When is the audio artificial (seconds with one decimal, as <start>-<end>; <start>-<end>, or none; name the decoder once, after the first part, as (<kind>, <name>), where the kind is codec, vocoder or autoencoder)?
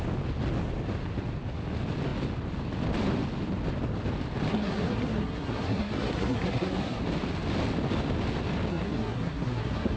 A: 4.5-7.0 (codec, SNAC); 8.7-10.0